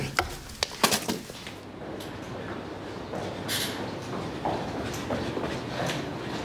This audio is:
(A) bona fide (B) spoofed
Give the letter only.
A